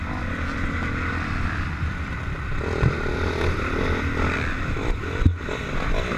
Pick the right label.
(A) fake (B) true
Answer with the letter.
B